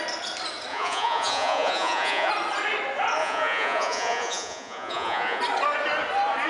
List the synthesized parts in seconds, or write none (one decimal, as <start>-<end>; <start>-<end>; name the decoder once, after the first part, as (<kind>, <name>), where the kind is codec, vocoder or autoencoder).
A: 0.7-2.3 (vocoder, Vocos); 3.2-5.4

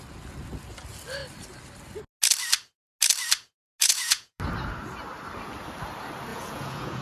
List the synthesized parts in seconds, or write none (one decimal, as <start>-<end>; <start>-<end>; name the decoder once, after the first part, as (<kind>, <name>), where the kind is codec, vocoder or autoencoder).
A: 3.8-4.4 (vocoder, Vocos); 6.3-7.0

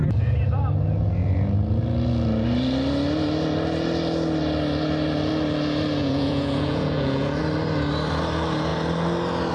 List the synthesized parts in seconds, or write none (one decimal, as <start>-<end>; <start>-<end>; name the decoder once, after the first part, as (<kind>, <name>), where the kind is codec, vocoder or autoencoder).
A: 6.0-7.4 (vocoder, Vocos)

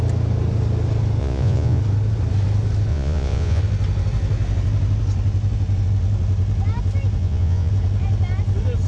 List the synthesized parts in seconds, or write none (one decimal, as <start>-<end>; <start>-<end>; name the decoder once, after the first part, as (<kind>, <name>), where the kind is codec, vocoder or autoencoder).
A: 1.2-1.8 (vocoder, Vocos); 2.9-3.6; 7.2-7.7

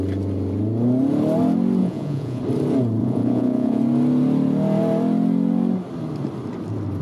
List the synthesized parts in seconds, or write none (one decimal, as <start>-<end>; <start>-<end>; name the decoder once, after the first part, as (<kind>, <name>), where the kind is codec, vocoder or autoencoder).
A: 1.8-2.4 (vocoder, Vocos); 3.0-3.8

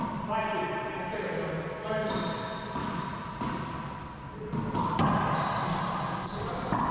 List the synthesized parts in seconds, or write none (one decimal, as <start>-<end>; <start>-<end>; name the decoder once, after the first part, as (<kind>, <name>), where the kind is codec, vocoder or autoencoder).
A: 2.8-3.5 (vocoder, Vocos)